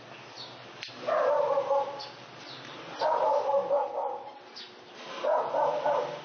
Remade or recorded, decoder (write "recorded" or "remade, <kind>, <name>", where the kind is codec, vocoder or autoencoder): recorded